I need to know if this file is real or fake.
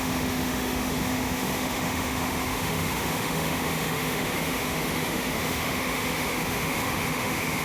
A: fake